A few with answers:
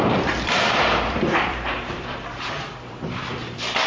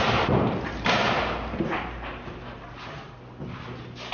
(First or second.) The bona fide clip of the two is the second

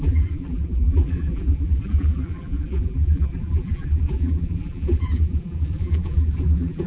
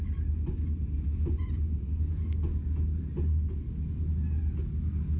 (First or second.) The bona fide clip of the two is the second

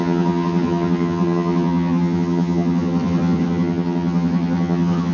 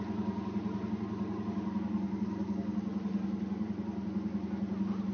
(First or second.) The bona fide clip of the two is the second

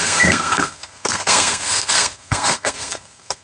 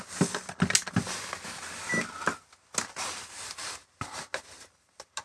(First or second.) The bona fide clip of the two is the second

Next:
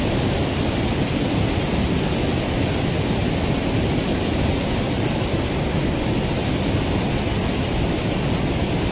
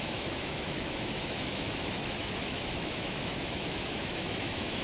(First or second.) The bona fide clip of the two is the first